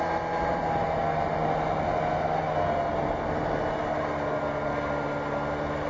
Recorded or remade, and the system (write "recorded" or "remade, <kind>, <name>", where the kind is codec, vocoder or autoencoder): recorded